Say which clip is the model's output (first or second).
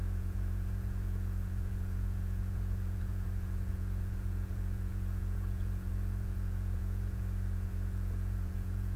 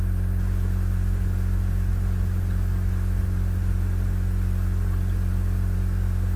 first